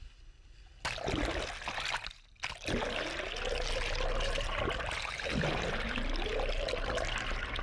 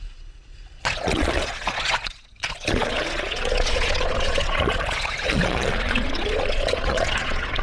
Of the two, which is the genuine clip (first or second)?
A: first